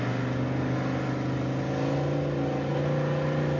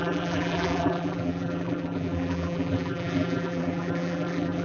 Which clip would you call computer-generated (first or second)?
second